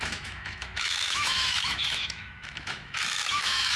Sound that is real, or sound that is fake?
fake